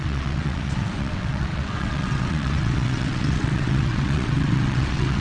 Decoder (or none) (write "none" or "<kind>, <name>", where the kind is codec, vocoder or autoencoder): vocoder, WaveNeXt